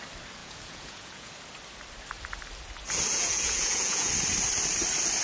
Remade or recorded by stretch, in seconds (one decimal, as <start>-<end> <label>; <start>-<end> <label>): 0.0-0.4 recorded; 0.4-1.3 remade; 1.3-3.1 recorded; 3.1-4.1 remade; 4.1-5.2 recorded